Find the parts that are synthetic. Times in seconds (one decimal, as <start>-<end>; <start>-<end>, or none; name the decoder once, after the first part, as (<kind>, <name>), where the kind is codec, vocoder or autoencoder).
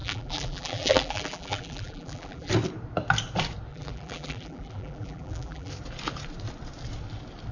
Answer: 0.0-2.5 (vocoder, BigVGAN v2); 3.7-5.7